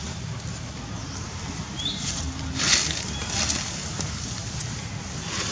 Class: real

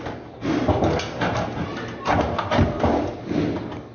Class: real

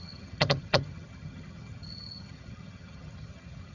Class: fake